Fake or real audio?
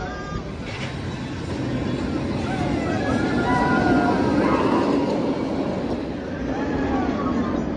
real